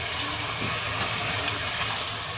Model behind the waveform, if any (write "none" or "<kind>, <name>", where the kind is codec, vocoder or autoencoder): none